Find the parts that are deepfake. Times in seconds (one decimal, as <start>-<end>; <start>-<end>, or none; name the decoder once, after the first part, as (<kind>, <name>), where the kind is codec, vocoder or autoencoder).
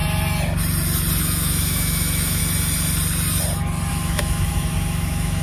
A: 1.2-2.4 (autoencoder, DAC-VAE); 3.9-5.4